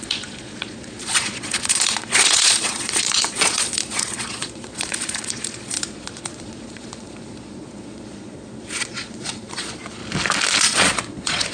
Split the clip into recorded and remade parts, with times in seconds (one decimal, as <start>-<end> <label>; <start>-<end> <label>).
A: 0.0-10.0 remade; 10.0-10.6 recorded; 10.6-11.5 remade